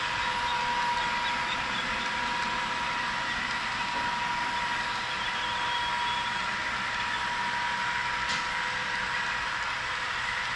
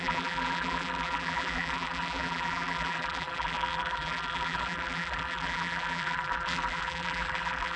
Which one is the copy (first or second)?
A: second